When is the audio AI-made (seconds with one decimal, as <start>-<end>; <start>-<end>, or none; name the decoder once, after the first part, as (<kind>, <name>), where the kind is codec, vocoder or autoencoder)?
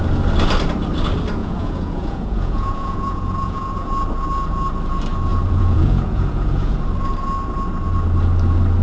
1.4-3.9 (vocoder, Vocos); 5.3-6.7